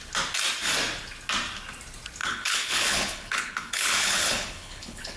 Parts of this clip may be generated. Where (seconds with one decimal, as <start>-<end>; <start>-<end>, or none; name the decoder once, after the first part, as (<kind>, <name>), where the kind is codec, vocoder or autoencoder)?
2.2-5.2 (codec, HILCodec)